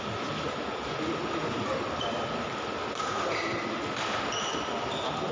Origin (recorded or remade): recorded